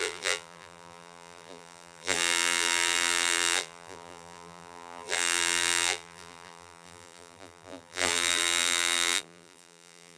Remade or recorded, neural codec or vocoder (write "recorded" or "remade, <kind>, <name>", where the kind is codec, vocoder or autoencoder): remade, vocoder, BigVGAN v2